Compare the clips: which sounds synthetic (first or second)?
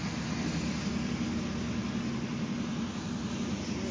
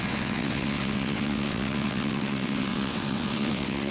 second